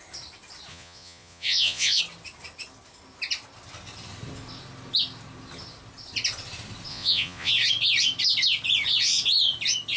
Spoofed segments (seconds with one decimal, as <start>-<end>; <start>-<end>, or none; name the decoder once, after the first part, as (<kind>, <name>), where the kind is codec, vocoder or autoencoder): 0.7-2.0 (vocoder, Vocos); 6.9-7.5